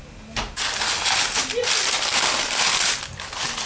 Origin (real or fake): real